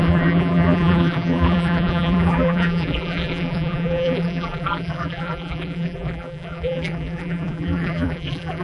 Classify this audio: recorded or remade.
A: remade